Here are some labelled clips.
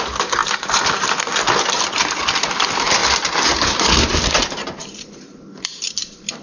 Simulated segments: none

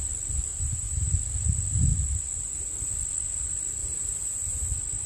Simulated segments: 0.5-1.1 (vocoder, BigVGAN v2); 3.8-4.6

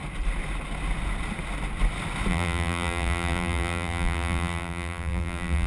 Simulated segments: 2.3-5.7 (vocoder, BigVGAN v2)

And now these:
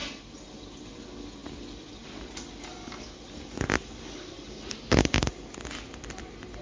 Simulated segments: none

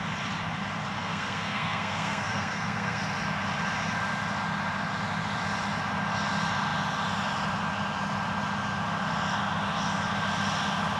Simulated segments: 1.0-3.0 (codec, SNAC)

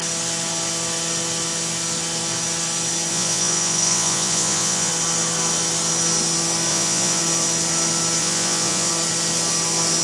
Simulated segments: 3.1-4.9 (vocoder, Vocos); 6.7-7.2; 8.2-8.9

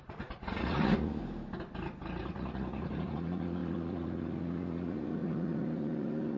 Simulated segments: 0.0-1.2 (vocoder, Vocos); 2.2-6.4